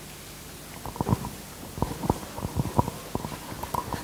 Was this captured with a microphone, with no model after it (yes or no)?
yes